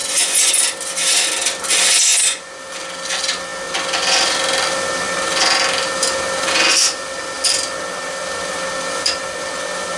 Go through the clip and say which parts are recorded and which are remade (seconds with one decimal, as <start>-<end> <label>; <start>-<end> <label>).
0.0-0.5 remade; 0.5-2.1 recorded; 2.1-2.6 remade; 2.6-10.0 recorded